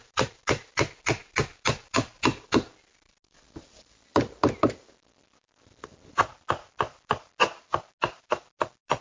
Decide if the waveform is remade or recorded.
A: recorded